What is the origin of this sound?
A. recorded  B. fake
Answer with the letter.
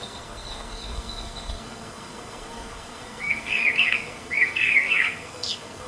B